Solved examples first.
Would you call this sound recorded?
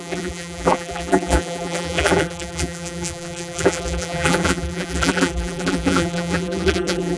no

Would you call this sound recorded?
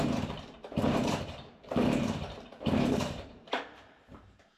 no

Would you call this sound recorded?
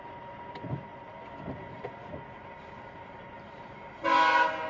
yes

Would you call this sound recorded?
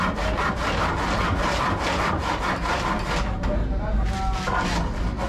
yes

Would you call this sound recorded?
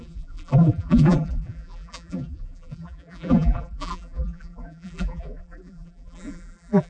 no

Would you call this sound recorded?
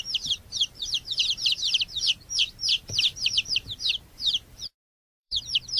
no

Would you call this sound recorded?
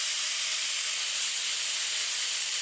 no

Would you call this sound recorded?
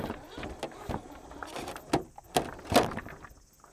yes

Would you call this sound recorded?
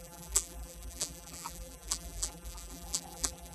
no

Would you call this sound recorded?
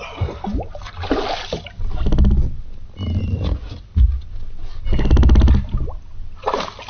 yes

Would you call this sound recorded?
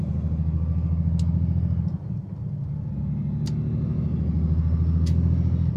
yes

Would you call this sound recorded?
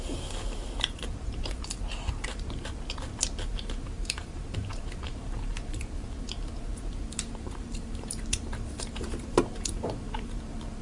no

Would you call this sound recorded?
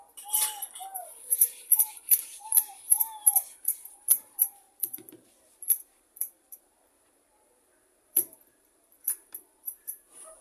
no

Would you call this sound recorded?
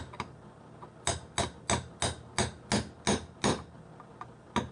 yes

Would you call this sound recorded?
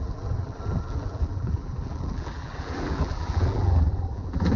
no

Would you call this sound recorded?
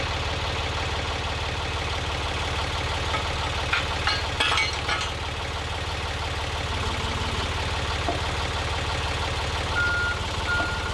yes